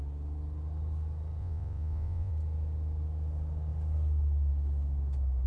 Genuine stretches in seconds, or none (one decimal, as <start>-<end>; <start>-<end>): 0.0-1.4; 2.3-5.5